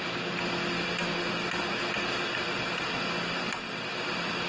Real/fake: real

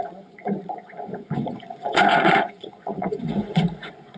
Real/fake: fake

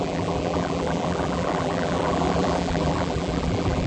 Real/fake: fake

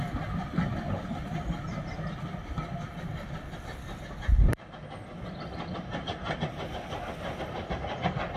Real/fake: real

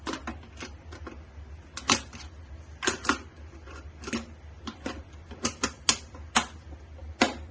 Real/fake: real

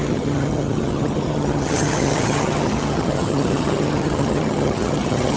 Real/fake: fake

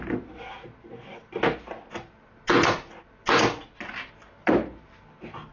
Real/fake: real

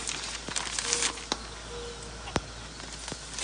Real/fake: real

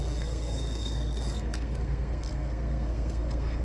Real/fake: fake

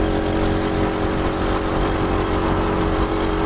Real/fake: real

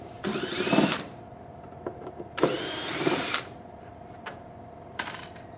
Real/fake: fake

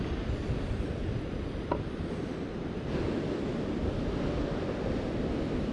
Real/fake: real